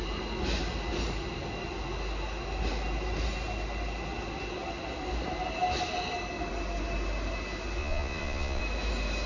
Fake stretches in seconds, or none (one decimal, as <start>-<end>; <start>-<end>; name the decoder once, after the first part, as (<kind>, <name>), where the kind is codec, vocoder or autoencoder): 7.8-8.6 (vocoder, Vocos)